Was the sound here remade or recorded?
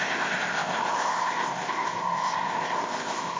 remade